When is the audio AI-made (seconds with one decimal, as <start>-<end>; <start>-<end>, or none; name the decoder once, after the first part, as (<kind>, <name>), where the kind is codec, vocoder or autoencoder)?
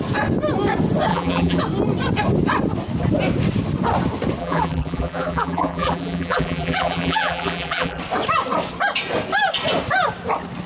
1.1-1.6 (vocoder, BigVGAN v2); 4.4-8.0